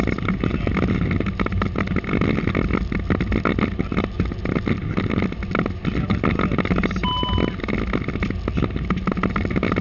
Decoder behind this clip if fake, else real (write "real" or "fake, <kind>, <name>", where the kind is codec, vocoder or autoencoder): real